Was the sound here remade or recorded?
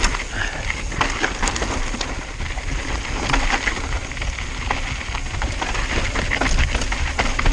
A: recorded